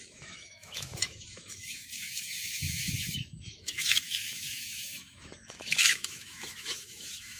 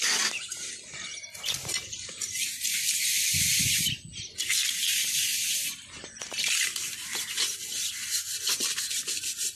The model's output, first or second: first